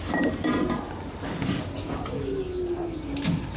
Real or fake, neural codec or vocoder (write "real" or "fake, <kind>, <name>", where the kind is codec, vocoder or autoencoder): real